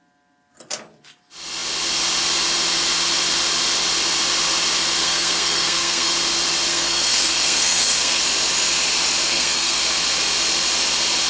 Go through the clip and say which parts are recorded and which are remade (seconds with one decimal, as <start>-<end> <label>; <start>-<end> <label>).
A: 0.0-5.0 recorded; 5.0-6.1 remade; 6.1-6.7 recorded; 6.7-8.2 remade; 8.2-9.3 recorded; 9.3-9.8 remade; 9.8-11.3 recorded